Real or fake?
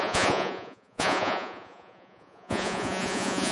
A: fake